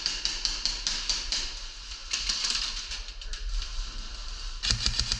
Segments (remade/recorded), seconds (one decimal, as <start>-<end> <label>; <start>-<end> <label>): 0.0-5.2 recorded